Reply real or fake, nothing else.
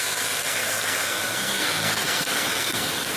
fake